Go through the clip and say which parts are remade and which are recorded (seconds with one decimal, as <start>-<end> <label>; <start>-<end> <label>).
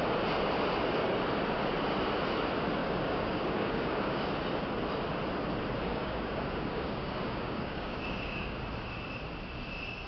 0.0-2.8 recorded; 2.8-4.2 remade; 4.2-5.8 recorded; 5.8-8.6 remade; 8.6-10.1 recorded